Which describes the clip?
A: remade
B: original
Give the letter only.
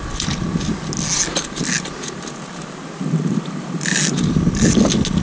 B